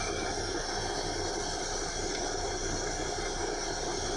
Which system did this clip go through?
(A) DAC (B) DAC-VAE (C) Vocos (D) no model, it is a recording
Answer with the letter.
D